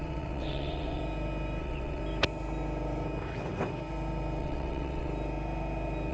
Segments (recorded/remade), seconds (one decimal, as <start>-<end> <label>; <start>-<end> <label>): 0.0-1.0 remade; 1.0-1.6 recorded; 1.6-2.0 remade; 2.0-4.4 recorded; 4.4-5.1 remade; 5.1-6.1 recorded